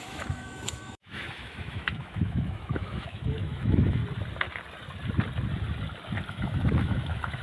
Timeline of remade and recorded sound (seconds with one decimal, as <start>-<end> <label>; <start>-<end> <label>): 0.0-4.0 remade; 4.0-6.3 recorded; 6.3-7.4 remade